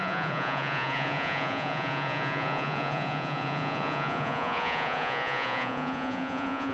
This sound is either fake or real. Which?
fake